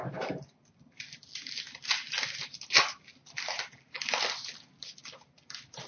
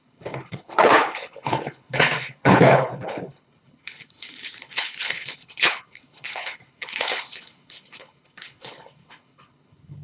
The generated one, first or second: second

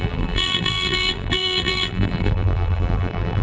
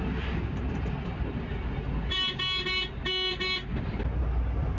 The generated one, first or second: first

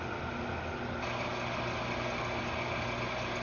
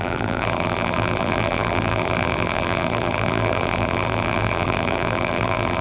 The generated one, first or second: second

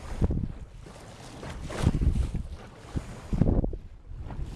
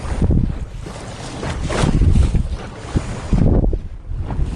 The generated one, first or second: second